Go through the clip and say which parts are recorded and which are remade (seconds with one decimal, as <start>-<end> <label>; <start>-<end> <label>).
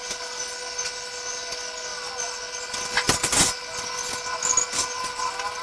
0.0-5.6 recorded